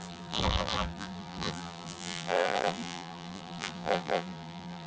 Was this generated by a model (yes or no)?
yes